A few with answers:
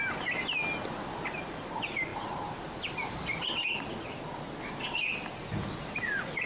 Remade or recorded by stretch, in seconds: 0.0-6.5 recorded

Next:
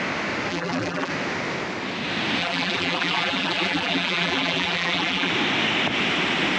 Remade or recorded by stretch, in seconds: 0.0-0.5 recorded; 0.5-1.1 remade; 1.1-2.4 recorded; 2.4-5.3 remade; 5.3-6.6 recorded

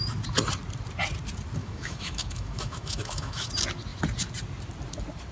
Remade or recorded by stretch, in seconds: 0.0-1.6 recorded; 1.6-3.5 remade; 3.5-5.3 recorded

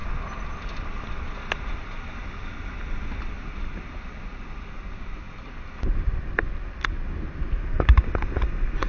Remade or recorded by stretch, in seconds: 0.0-8.9 recorded

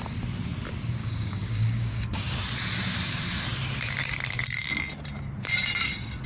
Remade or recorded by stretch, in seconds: 0.0-1.0 recorded; 1.0-2.4 remade; 2.4-6.3 recorded